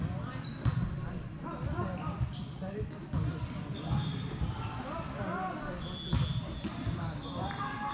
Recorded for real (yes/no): yes